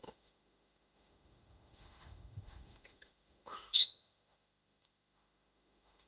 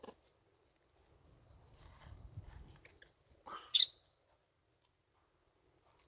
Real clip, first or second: second